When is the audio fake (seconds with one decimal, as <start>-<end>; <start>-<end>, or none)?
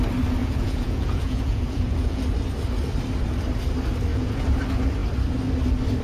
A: 0.4-2.2; 4.1-4.6